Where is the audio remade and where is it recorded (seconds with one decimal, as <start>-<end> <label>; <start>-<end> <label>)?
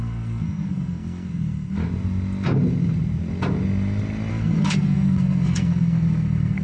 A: 0.0-1.8 remade; 1.8-4.3 recorded; 4.3-6.6 remade